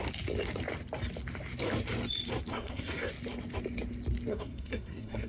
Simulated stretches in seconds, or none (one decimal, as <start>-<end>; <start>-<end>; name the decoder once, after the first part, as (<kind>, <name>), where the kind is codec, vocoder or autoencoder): 2.5-3.1 (codec, SNAC); 4.3-5.3